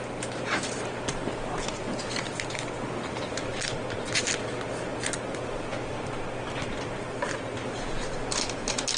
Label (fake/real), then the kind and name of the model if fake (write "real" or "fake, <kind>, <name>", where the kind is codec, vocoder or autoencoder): real